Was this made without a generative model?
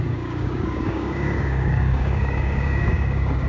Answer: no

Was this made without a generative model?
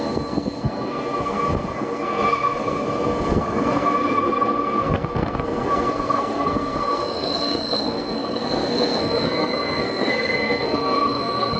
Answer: no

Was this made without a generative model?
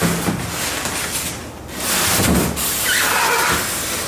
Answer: yes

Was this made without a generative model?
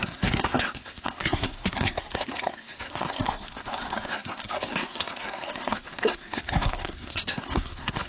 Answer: no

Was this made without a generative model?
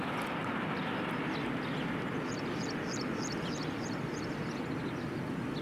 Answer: yes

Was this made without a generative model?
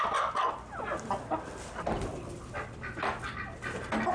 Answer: yes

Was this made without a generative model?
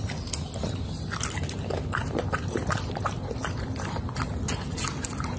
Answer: yes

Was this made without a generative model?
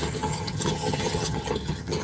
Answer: no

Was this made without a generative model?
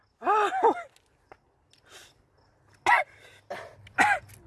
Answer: yes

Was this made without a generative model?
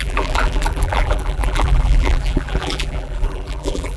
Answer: no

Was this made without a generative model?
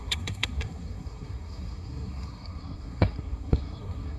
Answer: no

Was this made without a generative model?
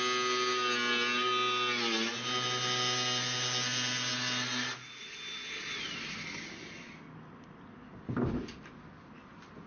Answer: yes